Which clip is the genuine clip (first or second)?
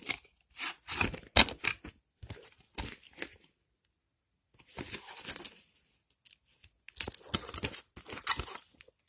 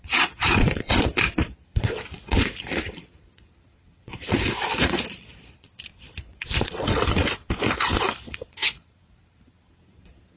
first